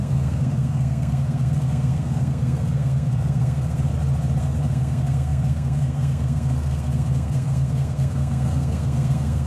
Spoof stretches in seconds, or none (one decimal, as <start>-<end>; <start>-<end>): 0.0-3.9; 4.4-9.5